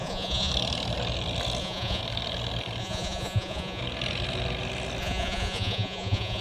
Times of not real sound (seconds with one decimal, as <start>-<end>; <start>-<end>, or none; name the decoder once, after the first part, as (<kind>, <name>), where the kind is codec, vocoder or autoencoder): 0.0-0.5 (vocoder, Vocos); 1.6-2.0; 2.8-3.8; 5.0-6.4